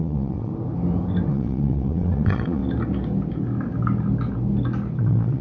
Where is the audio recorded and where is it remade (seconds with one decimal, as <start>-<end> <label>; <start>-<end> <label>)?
0.0-0.5 remade; 0.5-1.3 recorded; 1.3-2.6 remade; 2.6-5.0 recorded; 5.0-5.4 remade